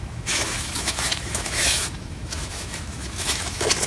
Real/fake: fake